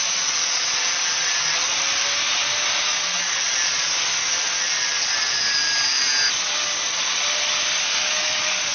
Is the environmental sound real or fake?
real